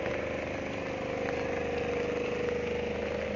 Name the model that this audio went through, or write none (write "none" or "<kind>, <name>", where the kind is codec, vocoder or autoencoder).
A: none